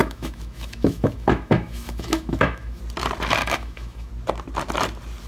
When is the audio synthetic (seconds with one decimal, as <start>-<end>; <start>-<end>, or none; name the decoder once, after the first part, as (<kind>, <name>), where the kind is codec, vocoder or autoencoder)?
0.0-2.8 (autoencoder, DAC-VAE); 3.4-4.1